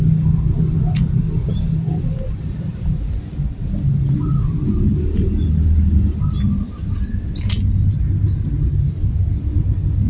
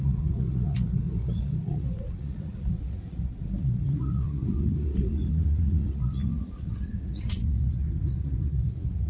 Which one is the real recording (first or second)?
first